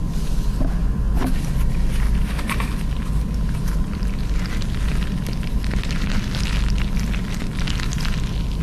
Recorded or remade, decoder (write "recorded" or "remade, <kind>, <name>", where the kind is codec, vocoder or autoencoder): recorded